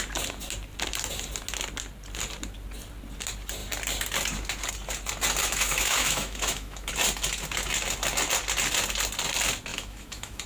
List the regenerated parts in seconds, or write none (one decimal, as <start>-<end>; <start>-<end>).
5.4-6.9; 9.7-10.5